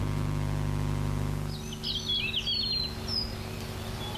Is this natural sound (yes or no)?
yes